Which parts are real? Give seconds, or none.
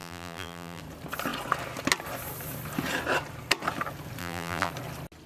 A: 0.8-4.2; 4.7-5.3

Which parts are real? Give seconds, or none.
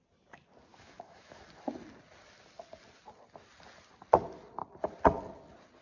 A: 0.0-0.7; 1.4-5.8